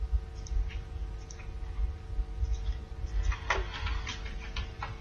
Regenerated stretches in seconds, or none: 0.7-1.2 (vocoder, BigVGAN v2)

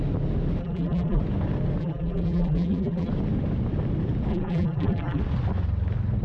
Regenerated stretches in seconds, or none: 0.6-1.2 (vocoder, BigVGAN v2); 1.8-3.1; 4.3-5.2

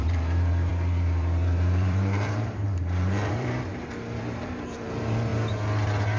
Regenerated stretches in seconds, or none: 0.0-3.7 (vocoder, BigVGAN v2); 4.2-5.3